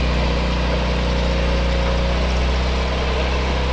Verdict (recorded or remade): recorded